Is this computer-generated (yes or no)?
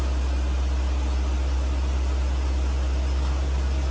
no